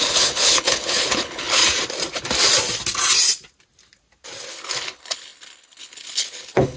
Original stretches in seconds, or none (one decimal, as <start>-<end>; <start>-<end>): 1.6-4.5